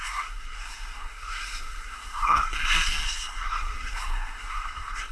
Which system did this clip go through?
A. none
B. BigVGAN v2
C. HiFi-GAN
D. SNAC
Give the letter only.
D